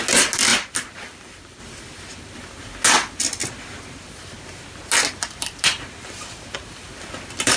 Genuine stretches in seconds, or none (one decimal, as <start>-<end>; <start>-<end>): 0.0-0.5; 1.6-7.6